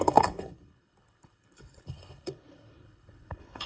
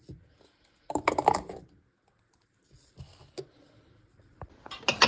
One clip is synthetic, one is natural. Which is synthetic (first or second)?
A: first